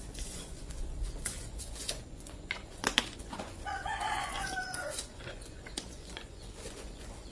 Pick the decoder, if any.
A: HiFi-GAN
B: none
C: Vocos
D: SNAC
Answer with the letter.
C